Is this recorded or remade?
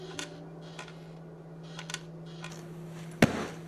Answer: recorded